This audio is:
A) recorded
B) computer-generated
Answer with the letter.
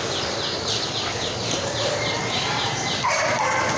A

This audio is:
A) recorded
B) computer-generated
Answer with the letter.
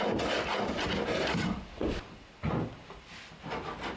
A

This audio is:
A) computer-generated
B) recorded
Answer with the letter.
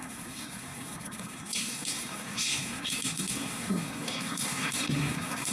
A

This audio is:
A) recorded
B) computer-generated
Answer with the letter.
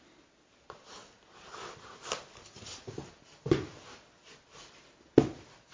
A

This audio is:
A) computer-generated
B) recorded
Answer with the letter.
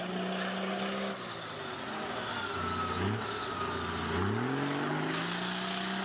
B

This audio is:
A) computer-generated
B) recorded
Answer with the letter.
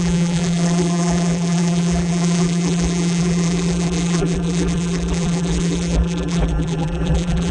A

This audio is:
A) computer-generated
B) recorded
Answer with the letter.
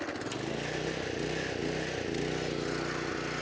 B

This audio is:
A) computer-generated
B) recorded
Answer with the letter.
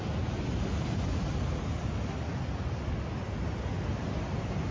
B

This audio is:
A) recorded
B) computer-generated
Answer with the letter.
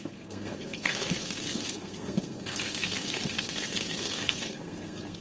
B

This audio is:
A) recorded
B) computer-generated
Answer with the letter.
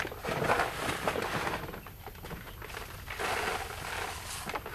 A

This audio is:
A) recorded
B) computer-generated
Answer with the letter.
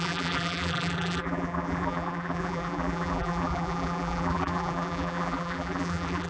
B